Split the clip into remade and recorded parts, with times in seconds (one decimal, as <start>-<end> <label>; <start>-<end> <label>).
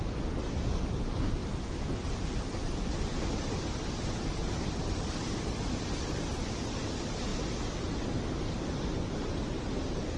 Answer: 0.0-10.2 recorded